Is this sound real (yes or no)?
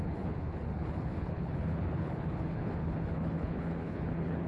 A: no